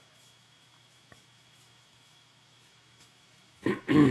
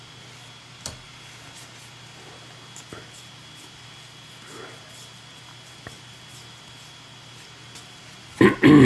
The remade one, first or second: first